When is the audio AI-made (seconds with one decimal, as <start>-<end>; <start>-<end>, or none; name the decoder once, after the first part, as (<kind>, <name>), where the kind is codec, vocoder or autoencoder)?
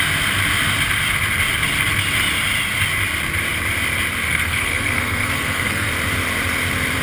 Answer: 4.2-5.9 (codec, SNAC)